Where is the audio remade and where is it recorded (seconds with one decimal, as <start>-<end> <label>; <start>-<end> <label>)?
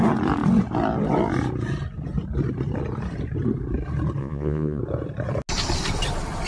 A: 0.0-4.2 recorded; 4.2-4.8 remade; 4.8-6.5 recorded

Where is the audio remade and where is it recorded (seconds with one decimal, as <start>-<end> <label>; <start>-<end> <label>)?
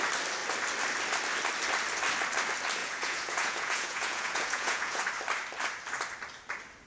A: 0.0-2.8 recorded; 2.8-5.0 remade; 5.0-6.9 recorded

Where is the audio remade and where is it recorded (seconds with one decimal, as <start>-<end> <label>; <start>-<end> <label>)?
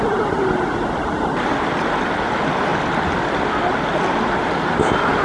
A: 0.0-5.2 recorded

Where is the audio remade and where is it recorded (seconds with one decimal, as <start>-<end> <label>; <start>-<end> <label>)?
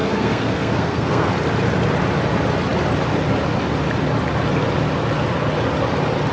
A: 0.0-1.3 remade; 1.3-6.3 recorded